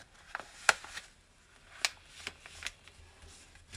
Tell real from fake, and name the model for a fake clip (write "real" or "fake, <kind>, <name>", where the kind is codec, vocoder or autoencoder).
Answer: real